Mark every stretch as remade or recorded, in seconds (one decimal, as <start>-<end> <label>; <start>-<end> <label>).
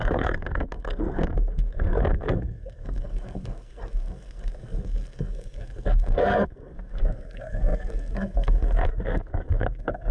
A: 0.0-10.1 remade